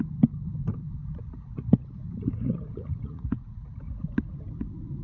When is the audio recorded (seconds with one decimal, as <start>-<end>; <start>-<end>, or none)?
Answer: 0.0-1.0; 4.0-5.0